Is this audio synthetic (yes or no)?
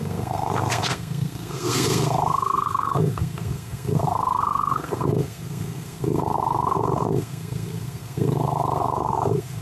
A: yes